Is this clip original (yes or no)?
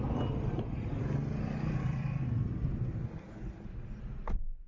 yes